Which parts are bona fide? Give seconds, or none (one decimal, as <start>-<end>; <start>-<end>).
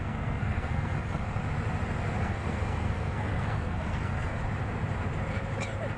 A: 1.4-2.2; 4.4-6.0